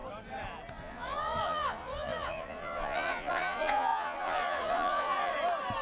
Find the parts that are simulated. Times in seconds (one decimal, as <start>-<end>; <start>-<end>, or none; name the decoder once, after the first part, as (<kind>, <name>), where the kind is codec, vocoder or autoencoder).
0.7-5.3 (vocoder, Vocos)